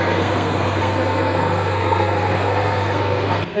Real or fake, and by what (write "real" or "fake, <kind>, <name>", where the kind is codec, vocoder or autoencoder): fake, codec, SNAC